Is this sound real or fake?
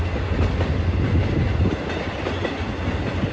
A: real